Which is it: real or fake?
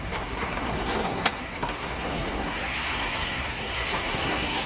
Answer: fake